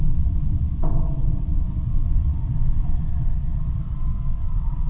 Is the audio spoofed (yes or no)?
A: yes